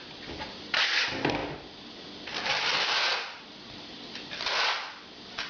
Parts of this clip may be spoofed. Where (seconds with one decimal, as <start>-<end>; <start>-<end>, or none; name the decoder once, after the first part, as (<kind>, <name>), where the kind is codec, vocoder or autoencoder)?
none